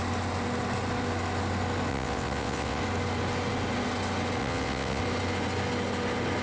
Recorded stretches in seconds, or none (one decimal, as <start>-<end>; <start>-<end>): 0.0-1.9; 2.8-4.4; 5.0-6.4